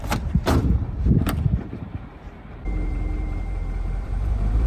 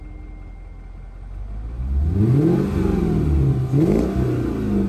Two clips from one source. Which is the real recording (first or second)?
second